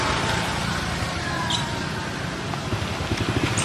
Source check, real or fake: real